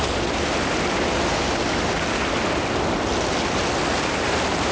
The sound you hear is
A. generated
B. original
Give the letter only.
B